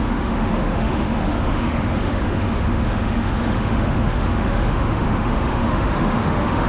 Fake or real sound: fake